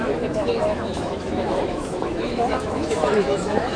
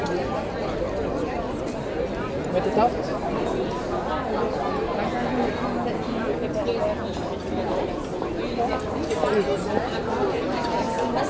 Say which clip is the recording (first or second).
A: second